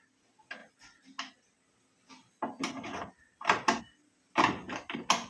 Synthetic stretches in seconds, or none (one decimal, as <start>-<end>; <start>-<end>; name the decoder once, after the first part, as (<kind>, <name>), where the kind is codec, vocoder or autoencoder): none